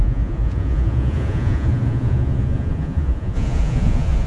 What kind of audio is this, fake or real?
fake